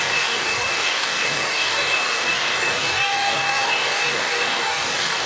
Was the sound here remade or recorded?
remade